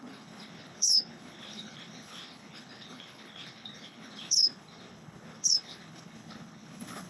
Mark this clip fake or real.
fake